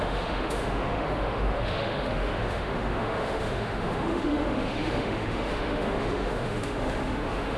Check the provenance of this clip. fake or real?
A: fake